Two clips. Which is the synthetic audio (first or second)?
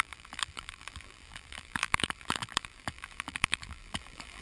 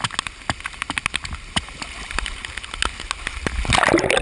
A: first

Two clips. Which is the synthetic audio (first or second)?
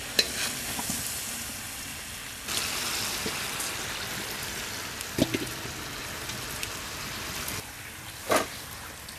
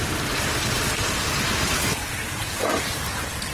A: second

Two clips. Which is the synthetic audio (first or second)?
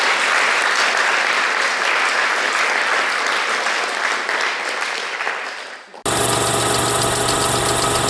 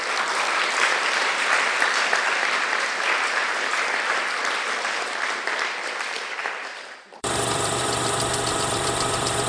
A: second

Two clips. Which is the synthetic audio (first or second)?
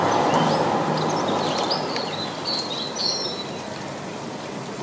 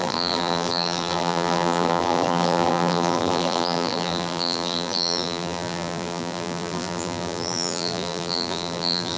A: second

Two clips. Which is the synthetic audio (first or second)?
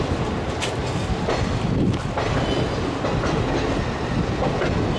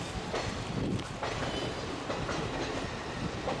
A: second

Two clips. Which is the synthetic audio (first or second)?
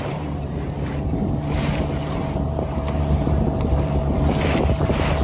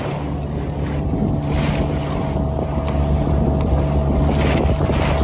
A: first